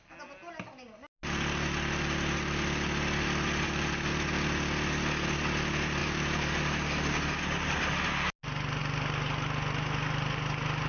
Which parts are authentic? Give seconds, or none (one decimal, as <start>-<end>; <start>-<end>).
0.0-10.9